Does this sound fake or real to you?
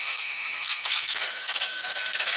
fake